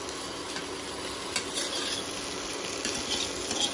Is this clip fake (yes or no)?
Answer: no